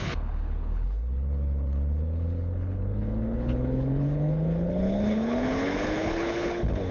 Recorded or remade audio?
remade